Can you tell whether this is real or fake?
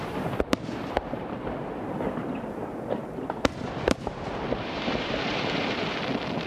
fake